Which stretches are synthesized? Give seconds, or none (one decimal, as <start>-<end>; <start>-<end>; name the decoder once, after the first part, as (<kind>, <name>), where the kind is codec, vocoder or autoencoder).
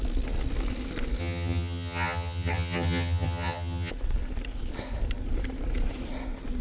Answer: 1.2-3.9 (vocoder, HiFi-GAN)